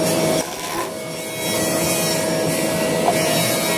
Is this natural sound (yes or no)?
yes